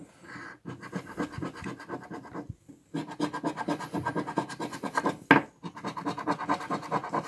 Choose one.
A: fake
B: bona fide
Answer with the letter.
B